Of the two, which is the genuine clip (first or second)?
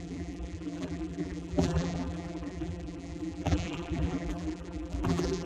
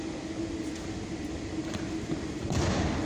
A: second